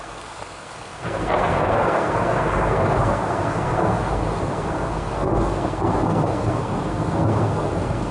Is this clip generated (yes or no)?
yes